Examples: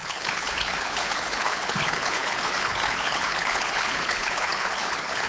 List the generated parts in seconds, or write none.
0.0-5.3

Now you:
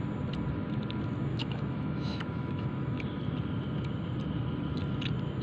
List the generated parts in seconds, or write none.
1.3-3.0

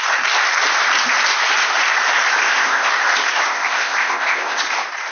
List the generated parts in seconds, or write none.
2.4-2.9; 3.5-4.6

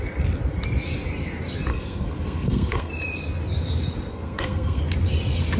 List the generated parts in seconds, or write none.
1.7-2.9; 4.1-4.8

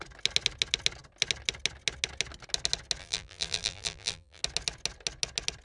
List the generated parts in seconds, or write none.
3.0-4.4